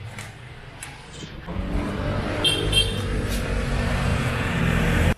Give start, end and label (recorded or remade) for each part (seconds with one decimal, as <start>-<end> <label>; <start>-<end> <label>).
0.0-4.1 recorded; 4.1-4.6 remade; 4.6-5.2 recorded